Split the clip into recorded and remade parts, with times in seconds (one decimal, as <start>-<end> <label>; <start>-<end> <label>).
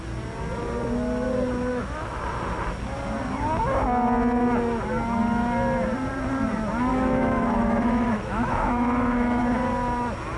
0.0-1.7 recorded; 1.7-2.2 remade; 2.2-6.9 recorded; 6.9-9.4 remade; 9.4-10.4 recorded